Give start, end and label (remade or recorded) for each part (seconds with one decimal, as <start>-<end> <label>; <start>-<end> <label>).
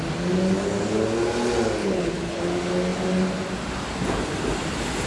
0.0-1.8 recorded; 1.8-2.4 remade; 2.4-5.1 recorded